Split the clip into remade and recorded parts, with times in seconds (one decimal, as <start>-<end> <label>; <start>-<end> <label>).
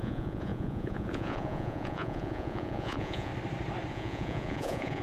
0.0-3.3 remade; 3.3-3.9 recorded; 3.9-5.0 remade